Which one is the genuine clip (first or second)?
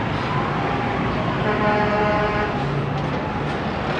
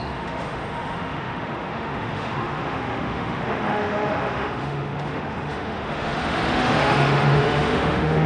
first